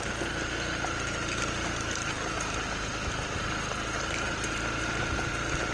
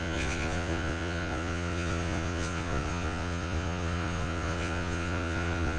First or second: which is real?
first